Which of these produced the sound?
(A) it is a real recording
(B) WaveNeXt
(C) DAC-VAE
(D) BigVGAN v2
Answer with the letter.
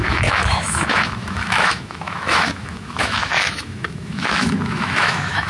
C